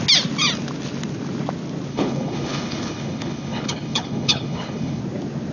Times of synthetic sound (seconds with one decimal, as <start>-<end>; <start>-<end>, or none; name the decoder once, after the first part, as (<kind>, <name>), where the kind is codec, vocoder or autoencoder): 1.9-5.0 (codec, HILCodec)